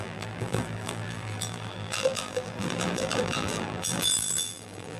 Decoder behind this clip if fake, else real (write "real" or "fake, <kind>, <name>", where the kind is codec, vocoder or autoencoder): fake, vocoder, BigVGAN v2